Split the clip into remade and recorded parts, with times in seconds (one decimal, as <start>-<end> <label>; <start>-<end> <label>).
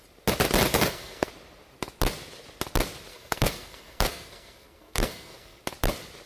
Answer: 0.0-0.7 recorded; 0.7-1.3 remade; 1.3-3.1 recorded; 3.1-5.6 remade; 5.6-6.3 recorded